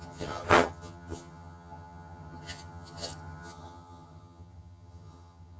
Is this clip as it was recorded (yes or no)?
no